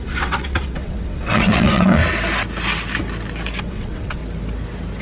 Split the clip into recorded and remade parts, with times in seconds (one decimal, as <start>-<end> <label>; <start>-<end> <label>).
0.0-2.0 remade; 2.0-3.6 recorded; 3.6-4.2 remade; 4.2-5.0 recorded